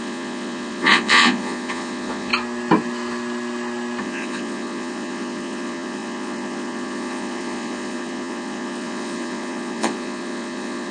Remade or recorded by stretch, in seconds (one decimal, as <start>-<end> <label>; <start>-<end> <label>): 0.0-2.3 remade; 2.3-4.0 recorded; 4.0-10.9 remade